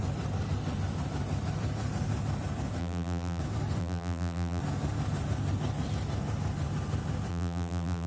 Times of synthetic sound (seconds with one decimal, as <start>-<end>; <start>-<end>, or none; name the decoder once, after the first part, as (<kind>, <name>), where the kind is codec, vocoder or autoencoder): 2.8-3.4 (vocoder, BigVGAN v2); 3.8-4.6; 7.3-8.1